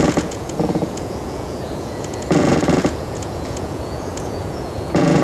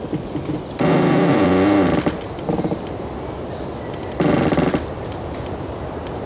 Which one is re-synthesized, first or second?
first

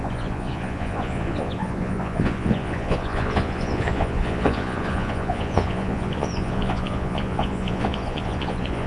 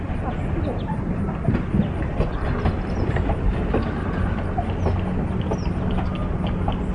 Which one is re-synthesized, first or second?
first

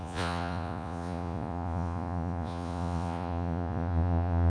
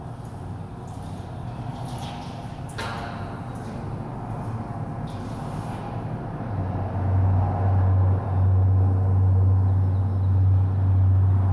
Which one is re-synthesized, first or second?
first